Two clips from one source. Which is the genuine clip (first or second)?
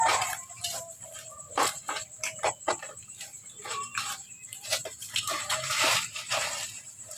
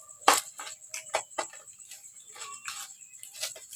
second